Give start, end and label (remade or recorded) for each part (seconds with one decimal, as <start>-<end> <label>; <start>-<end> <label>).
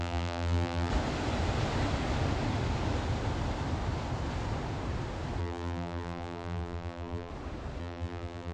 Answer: 0.0-0.9 remade; 0.9-5.4 recorded; 5.4-7.3 remade; 7.3-7.8 recorded; 7.8-8.5 remade